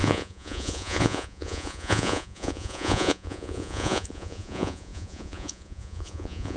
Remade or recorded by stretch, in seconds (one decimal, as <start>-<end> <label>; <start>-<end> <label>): 0.0-6.6 remade